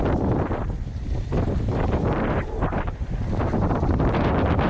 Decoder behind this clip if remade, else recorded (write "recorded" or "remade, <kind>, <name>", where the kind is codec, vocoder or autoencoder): recorded